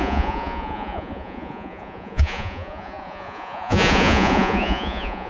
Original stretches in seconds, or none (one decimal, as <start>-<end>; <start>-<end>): none